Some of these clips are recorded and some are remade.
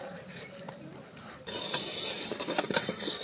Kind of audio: recorded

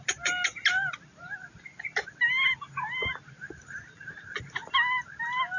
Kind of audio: recorded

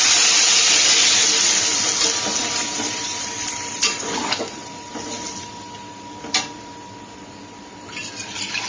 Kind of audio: recorded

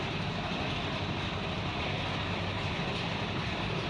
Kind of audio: recorded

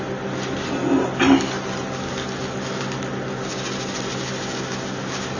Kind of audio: recorded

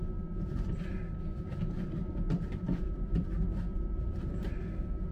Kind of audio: remade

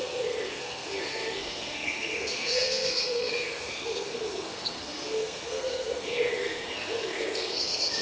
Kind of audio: remade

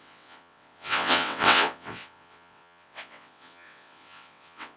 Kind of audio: remade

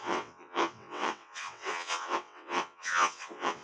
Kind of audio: remade